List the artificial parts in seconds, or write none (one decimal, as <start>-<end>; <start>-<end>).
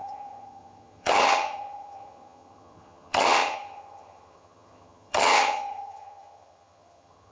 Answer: 0.0-7.3